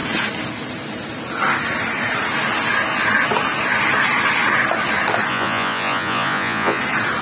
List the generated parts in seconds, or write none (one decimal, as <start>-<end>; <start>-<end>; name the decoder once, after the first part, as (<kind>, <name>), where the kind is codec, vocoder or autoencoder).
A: 5.3-6.8 (vocoder, Vocos)